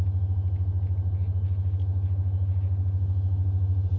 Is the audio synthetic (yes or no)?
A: no